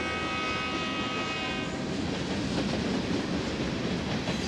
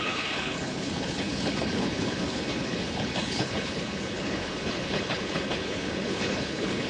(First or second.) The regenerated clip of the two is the second